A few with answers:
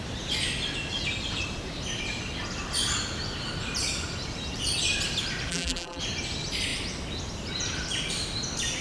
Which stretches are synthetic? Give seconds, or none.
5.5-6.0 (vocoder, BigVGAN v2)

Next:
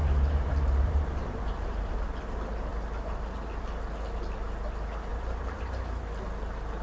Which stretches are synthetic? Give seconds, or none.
0.0-1.9 (vocoder, BigVGAN v2); 5.1-5.8

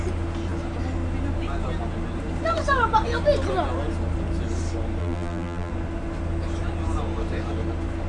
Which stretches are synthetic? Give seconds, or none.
5.0-5.7 (vocoder, BigVGAN v2)

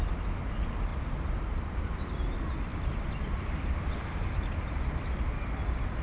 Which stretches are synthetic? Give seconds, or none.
0.9-1.8 (vocoder, BigVGAN v2); 2.7-4.1

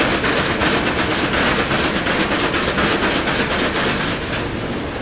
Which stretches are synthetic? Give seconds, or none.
none

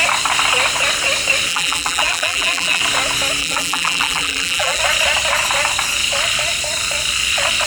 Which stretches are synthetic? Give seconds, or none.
1.5-2.8 (vocoder, BigVGAN v2); 3.4-4.8

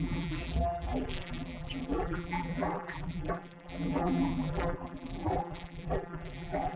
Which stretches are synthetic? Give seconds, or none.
0.0-6.8 (vocoder, BigVGAN v2)

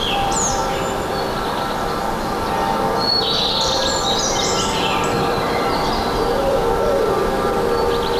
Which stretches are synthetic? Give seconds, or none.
0.0-0.6 (vocoder, BigVGAN v2); 3.5-8.2